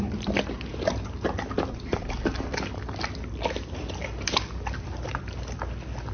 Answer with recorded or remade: recorded